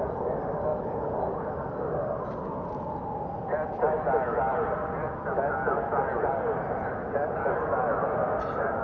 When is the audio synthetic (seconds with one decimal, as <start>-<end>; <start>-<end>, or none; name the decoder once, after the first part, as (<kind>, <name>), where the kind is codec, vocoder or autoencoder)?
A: none